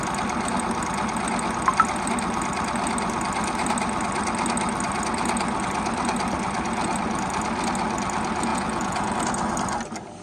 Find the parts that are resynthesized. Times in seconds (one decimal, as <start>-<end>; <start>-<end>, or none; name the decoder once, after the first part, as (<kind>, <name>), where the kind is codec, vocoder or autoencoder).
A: 8.5-9.1 (vocoder, Vocos)